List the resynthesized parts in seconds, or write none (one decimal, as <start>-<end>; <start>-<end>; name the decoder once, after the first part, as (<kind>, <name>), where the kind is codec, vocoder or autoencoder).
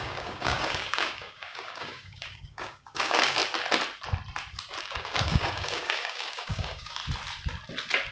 0.0-3.4 (codec, DAC); 4.8-7.0